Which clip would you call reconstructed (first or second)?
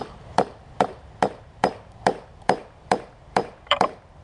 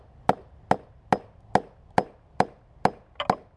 first